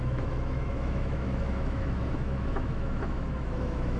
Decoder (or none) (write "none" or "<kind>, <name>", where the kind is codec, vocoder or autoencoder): autoencoder, DAC-VAE